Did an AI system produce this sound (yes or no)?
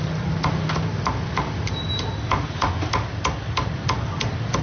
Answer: no